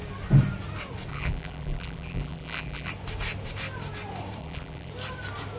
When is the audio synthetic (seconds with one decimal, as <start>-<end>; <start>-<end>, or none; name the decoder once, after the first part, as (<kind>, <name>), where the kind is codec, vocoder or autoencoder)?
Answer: 1.1-2.9 (vocoder, BigVGAN v2); 4.4-4.9